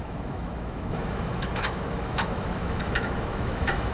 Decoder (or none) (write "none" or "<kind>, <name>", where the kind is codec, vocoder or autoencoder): autoencoder, DAC-VAE